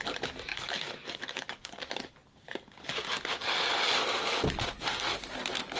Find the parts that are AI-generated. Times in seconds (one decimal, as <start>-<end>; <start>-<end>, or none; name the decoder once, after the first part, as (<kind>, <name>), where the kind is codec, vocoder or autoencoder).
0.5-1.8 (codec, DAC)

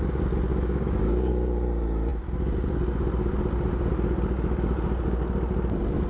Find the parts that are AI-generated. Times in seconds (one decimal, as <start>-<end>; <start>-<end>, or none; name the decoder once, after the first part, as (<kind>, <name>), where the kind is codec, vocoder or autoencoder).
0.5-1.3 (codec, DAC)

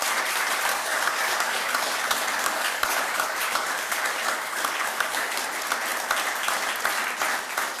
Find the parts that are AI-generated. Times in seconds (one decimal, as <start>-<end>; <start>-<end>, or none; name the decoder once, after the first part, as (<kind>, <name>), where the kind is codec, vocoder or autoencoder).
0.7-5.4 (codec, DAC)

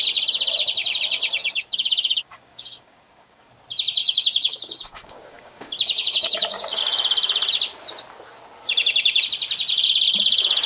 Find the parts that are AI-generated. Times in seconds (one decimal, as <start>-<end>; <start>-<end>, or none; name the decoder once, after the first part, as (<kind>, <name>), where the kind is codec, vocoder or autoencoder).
1.4-3.5 (codec, DAC); 4.0-6.8

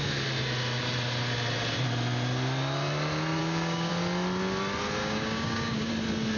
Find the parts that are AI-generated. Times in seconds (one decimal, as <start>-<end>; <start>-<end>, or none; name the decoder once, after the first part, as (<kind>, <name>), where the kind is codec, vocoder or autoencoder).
3.4-3.9 (codec, DAC); 5.0-5.9